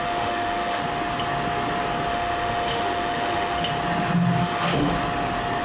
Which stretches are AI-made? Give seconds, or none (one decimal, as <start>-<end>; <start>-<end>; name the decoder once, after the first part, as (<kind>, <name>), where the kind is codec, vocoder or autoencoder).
0.0-0.8 (autoencoder, DAC-VAE); 2.1-3.7; 4.4-4.9